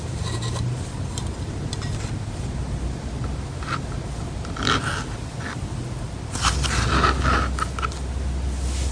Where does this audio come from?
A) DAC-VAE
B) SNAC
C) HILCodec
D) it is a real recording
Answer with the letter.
D